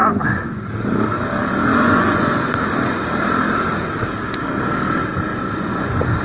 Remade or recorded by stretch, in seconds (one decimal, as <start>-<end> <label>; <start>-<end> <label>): 0.0-0.7 remade; 0.7-1.7 recorded; 1.7-2.6 remade; 2.6-5.3 recorded; 5.3-6.2 remade